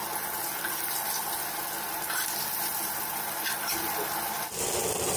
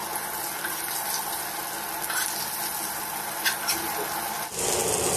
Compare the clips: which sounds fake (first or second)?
first